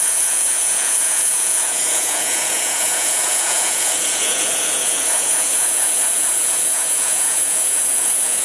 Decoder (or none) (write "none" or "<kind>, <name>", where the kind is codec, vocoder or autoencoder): vocoder, Vocos